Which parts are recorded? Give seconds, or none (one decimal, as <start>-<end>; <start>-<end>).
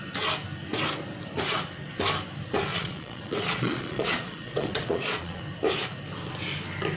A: 0.0-2.7; 5.4-7.0